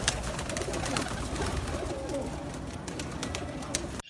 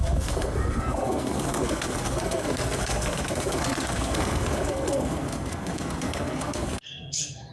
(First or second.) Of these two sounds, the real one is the first